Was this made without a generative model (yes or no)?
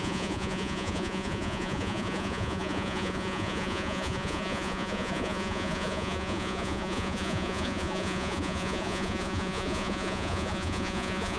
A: no